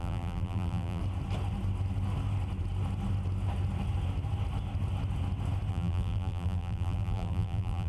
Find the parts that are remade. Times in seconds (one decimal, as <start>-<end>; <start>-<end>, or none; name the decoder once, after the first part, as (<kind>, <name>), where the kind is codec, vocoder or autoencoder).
0.0-1.0 (vocoder, BigVGAN v2); 5.7-7.9